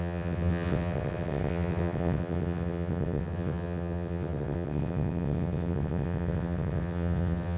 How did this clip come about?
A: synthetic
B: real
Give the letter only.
A